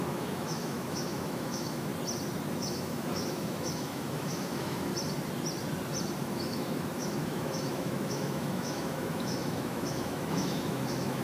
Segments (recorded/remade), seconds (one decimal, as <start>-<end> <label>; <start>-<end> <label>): 0.0-1.9 remade; 1.9-2.5 recorded; 2.5-4.9 remade; 4.9-6.2 recorded; 6.2-11.2 remade